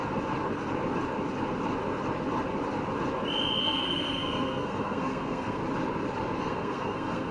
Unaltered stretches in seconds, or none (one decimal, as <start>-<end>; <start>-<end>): 0.0-3.6; 5.6-6.4